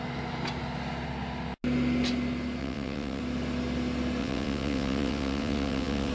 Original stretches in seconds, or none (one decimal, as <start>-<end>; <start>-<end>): 0.0-2.6; 3.2-4.2